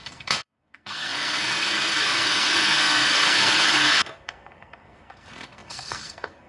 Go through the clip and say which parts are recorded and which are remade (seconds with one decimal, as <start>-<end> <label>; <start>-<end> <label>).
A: 0.0-6.5 remade